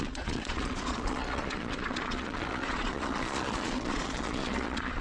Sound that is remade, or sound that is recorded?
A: remade